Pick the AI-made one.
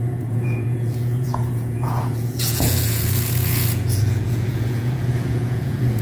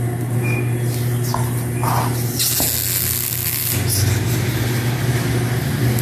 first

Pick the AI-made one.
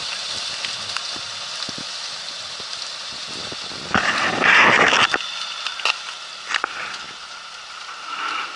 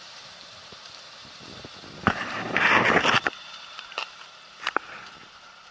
second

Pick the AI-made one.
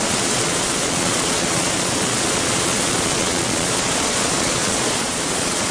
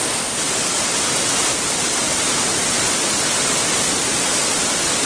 first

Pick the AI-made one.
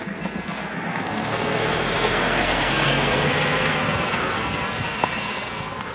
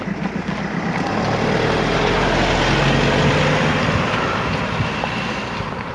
first